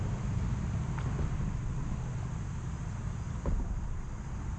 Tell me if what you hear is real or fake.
real